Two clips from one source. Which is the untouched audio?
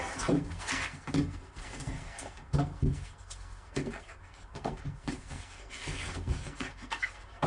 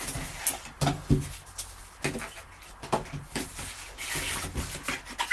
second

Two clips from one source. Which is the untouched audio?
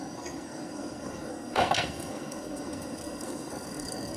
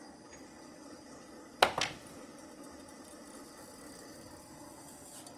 second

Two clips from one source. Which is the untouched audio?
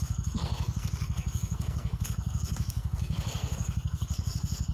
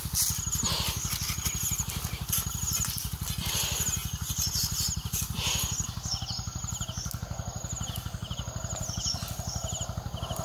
second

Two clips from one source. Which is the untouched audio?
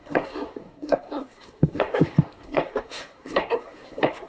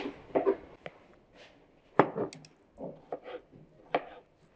second